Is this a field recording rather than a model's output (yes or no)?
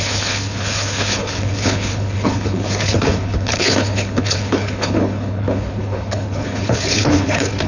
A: no